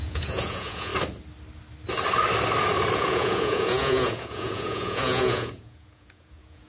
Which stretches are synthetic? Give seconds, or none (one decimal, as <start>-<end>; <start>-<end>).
0.0-0.9; 3.0-6.7